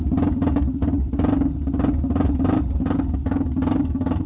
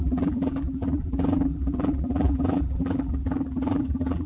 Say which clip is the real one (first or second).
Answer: first